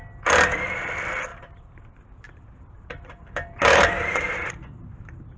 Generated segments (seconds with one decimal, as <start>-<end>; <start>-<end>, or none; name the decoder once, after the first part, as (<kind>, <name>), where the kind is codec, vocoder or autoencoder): 1.3-4.5 (vocoder, BigVGAN v2)